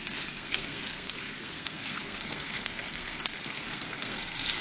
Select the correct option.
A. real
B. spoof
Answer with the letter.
B